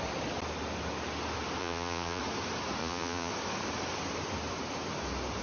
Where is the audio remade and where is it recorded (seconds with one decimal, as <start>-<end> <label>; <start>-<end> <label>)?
0.0-1.6 recorded; 1.6-2.2 remade; 2.2-2.8 recorded; 2.8-3.3 remade; 3.3-5.4 recorded